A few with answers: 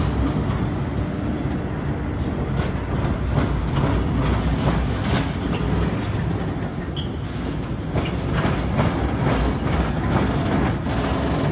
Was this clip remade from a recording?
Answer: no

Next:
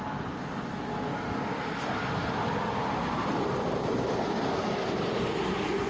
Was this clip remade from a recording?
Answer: no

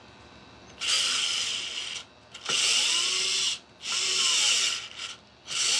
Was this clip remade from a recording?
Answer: no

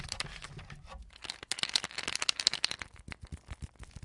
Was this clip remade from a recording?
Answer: no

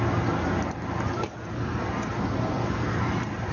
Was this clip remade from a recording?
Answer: no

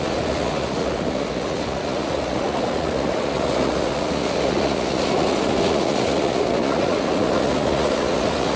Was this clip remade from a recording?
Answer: yes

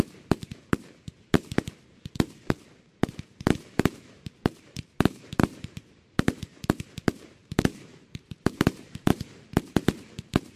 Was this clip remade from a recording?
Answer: yes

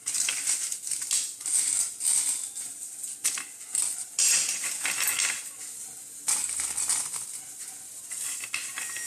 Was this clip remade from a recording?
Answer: no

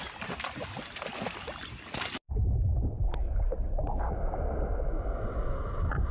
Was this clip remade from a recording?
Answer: no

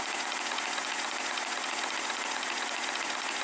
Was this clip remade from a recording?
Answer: yes